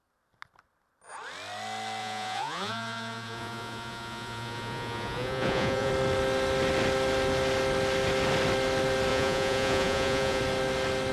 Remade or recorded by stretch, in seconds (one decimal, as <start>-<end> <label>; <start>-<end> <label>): 0.0-2.0 recorded; 2.0-5.9 remade; 5.9-9.1 recorded; 9.1-10.4 remade; 10.4-11.1 recorded